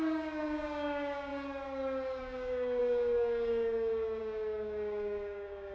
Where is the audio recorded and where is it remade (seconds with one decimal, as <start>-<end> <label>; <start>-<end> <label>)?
0.0-1.3 remade; 1.3-2.2 recorded; 2.2-5.7 remade